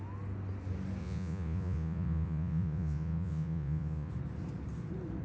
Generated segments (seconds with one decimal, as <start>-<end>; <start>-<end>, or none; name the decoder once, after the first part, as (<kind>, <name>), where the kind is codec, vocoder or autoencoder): 1.0-4.1 (vocoder, Vocos)